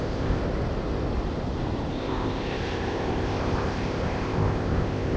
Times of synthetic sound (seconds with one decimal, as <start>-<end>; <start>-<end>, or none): 0.0-0.4; 1.9-5.2